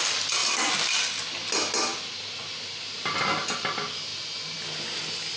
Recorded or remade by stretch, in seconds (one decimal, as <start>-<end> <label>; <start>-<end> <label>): 0.0-5.4 recorded